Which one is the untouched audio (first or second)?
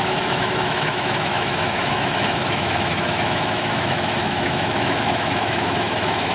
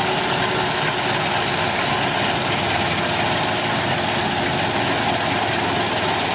second